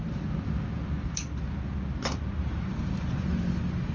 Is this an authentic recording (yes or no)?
yes